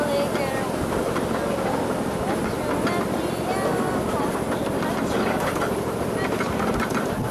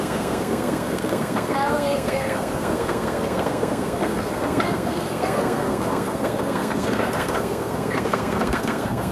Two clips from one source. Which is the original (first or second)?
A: first